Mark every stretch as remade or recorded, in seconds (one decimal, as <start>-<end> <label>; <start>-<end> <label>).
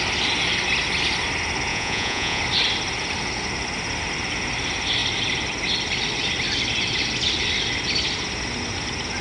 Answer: 0.0-1.7 recorded; 1.7-2.4 remade; 2.4-9.2 recorded